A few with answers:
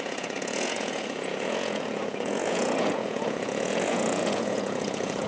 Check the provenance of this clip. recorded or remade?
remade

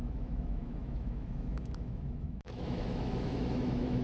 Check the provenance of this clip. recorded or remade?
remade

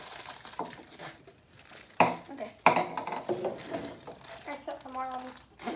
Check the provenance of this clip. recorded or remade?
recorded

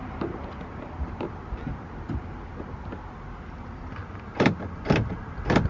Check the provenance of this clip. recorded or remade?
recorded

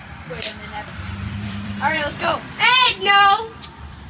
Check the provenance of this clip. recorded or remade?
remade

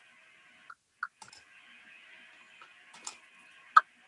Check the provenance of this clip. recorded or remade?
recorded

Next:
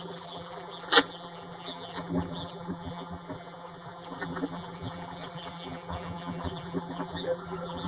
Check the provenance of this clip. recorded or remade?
remade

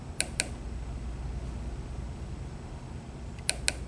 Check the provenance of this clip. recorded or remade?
recorded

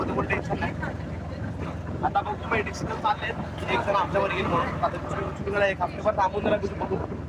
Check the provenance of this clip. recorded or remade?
recorded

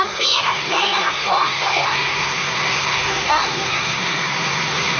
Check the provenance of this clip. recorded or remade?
remade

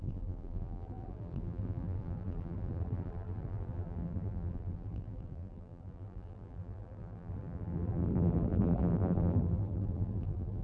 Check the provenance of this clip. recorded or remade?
remade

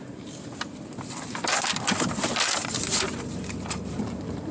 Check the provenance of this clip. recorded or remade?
remade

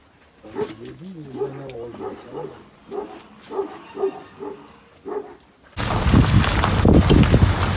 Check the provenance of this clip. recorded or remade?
recorded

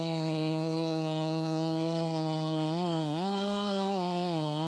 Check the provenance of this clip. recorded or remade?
remade